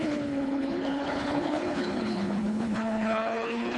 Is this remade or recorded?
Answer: remade